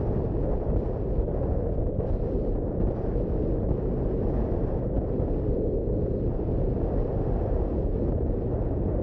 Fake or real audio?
real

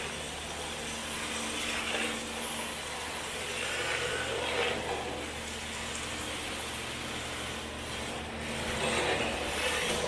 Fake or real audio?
real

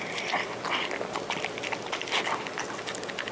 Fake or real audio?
real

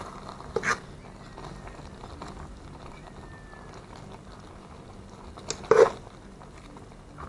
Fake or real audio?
real